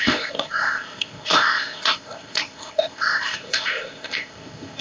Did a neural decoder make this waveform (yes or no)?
yes